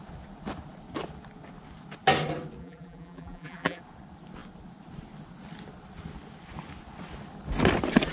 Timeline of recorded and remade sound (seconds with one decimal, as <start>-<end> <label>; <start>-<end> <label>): 0.0-2.6 recorded; 2.6-3.8 remade; 3.8-8.1 recorded